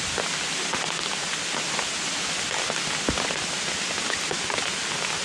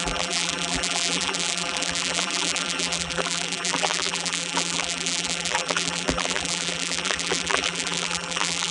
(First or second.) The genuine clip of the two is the first